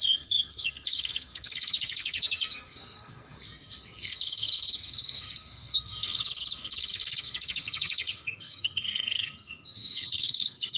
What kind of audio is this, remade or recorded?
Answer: remade